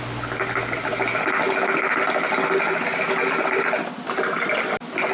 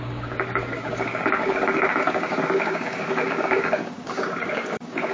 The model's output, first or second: second